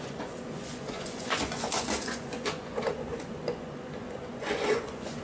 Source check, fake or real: fake